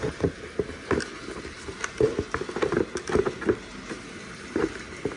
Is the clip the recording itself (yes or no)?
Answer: yes